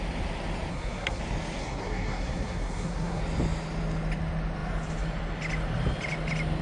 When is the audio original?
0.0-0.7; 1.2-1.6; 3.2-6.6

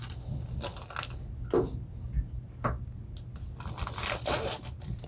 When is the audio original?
0.0-5.1

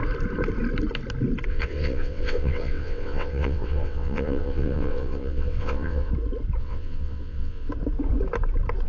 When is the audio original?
0.0-1.5; 6.1-6.6; 7.7-8.9